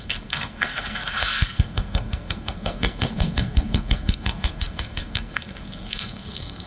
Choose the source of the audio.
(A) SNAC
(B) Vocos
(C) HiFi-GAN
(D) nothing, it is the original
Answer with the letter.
A